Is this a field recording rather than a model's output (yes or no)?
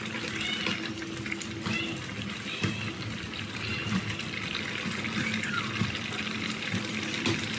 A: yes